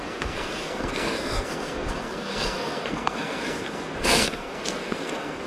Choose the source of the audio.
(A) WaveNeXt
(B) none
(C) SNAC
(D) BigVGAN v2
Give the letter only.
C